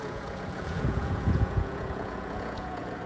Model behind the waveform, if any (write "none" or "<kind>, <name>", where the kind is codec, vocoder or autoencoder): vocoder, Vocos